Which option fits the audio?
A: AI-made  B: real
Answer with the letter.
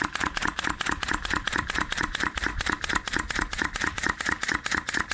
A